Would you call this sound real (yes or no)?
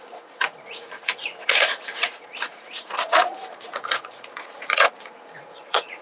no